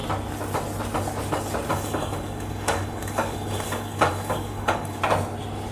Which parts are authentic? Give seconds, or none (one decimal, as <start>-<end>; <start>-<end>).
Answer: 0.0-1.7; 5.0-5.7